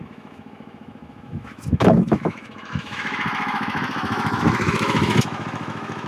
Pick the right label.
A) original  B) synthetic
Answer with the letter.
B